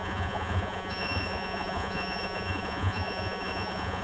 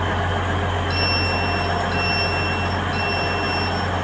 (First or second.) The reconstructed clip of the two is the first